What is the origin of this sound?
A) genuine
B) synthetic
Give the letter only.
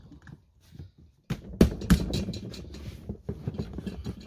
A